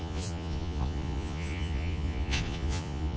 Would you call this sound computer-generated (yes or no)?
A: yes